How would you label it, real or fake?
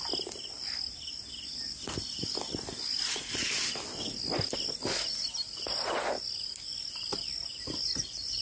real